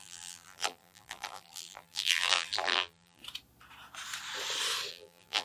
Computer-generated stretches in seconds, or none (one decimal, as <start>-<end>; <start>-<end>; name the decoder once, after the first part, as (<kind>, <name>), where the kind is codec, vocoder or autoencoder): 0.0-3.2 (vocoder, BigVGAN v2); 4.9-5.4

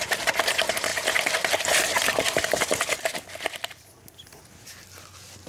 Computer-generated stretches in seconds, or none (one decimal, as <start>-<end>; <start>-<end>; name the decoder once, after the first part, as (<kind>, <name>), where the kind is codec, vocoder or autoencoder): none

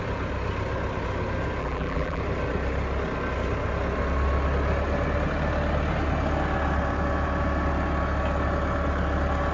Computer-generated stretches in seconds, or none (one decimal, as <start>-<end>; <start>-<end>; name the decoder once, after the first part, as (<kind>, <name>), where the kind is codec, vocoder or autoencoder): 1.6-2.2 (vocoder, BigVGAN v2)